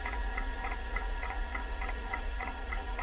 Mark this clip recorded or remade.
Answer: remade